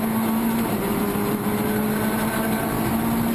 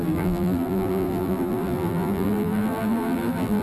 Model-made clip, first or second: second